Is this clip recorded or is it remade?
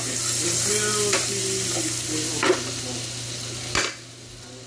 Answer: recorded